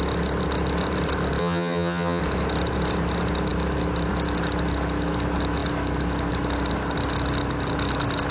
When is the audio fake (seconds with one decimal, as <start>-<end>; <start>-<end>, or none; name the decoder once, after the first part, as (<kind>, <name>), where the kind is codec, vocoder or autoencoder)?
1.4-2.2 (vocoder, HiFi-GAN)